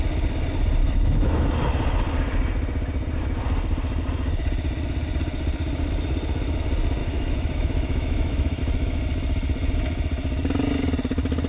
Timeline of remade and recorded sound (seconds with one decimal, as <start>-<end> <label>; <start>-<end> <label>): 0.0-0.8 recorded; 0.8-1.5 remade; 1.5-7.0 recorded; 7.0-8.6 remade; 8.6-11.5 recorded